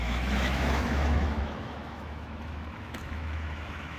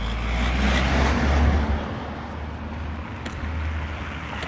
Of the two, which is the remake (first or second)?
first